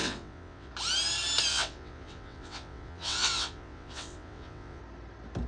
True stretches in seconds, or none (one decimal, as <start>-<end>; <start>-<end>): 0.7-1.5; 4.8-5.5